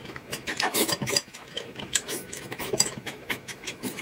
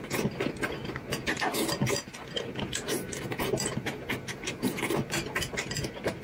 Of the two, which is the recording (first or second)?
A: second